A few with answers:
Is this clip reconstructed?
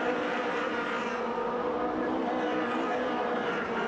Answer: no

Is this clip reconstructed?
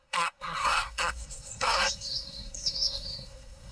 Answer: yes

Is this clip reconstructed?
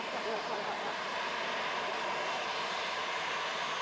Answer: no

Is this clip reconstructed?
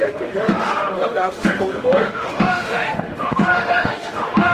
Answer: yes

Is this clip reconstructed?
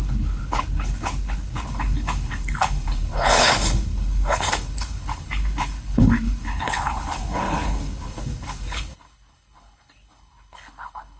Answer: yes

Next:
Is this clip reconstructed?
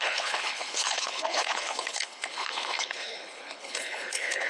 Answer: yes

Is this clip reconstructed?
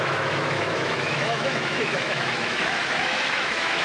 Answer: yes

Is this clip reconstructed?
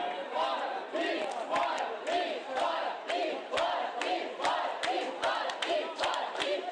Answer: no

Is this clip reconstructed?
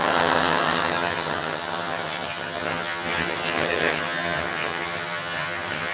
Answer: yes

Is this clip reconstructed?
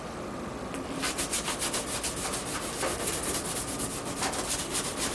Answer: no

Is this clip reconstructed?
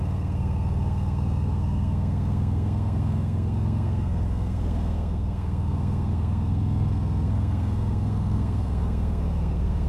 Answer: yes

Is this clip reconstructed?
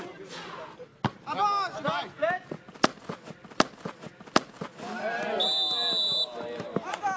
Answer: no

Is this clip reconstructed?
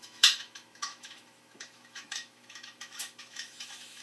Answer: yes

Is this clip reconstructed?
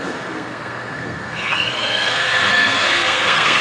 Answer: yes